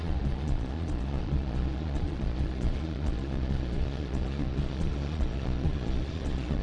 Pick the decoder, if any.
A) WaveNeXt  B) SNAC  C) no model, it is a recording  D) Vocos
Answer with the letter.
D